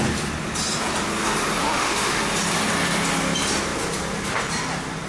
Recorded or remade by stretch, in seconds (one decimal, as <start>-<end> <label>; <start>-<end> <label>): 0.0-1.6 recorded; 1.6-2.2 remade; 2.2-5.1 recorded